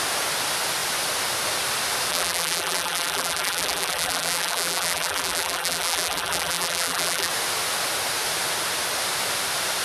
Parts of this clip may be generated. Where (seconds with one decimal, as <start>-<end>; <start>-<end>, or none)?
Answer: 2.1-7.3

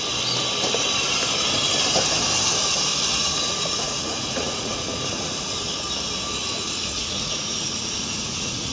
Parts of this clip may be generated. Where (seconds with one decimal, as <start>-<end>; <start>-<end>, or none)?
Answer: 3.2-5.6; 6.4-8.7